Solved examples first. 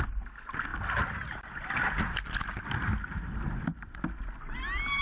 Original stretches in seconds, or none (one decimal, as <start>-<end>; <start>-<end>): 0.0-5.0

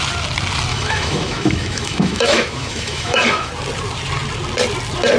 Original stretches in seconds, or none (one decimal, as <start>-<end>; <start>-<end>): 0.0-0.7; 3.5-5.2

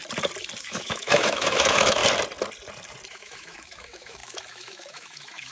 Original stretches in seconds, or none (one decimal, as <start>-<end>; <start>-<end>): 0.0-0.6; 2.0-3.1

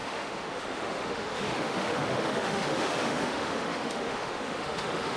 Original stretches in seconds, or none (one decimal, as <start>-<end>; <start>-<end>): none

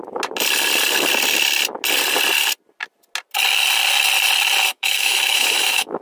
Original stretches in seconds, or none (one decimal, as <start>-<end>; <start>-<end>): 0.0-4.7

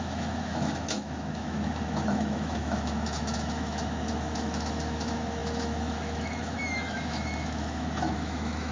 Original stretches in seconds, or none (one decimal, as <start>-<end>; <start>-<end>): none

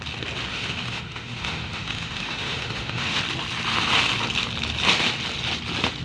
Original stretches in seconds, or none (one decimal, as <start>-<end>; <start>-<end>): 0.0-0.5; 3.2-6.0

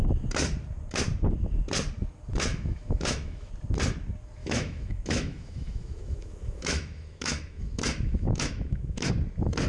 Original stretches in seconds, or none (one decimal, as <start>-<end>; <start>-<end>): 0.0-2.5; 3.5-4.4; 9.1-9.7